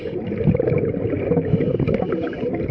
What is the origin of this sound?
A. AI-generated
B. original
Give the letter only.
B